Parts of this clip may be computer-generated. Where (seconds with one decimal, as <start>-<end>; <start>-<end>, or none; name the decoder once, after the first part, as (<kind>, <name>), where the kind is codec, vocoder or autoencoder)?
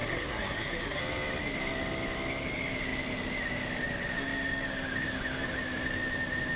0.0-1.0 (codec, SNAC)